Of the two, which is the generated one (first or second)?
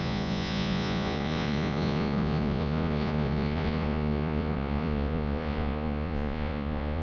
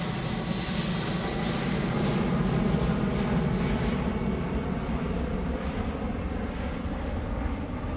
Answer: first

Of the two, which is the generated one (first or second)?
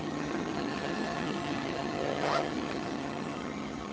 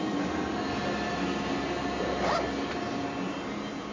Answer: first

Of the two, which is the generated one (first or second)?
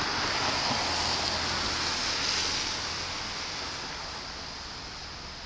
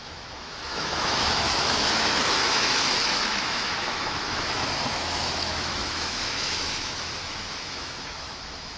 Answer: second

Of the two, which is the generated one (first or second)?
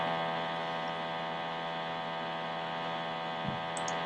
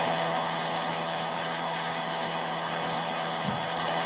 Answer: second